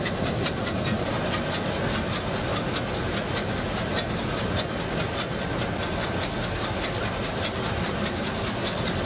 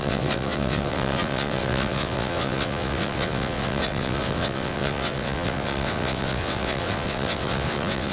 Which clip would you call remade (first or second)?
second